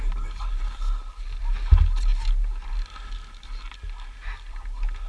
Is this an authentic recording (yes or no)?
yes